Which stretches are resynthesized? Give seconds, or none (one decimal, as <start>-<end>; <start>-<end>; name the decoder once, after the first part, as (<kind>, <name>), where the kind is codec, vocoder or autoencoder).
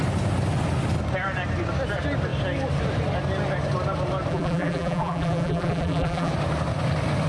4.3-6.3 (vocoder, BigVGAN v2)